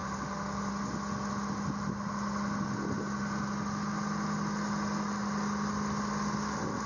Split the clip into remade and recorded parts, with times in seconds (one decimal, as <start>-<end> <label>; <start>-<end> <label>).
0.0-6.9 recorded